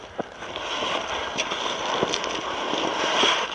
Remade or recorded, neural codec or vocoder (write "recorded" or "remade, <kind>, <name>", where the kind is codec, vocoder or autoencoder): recorded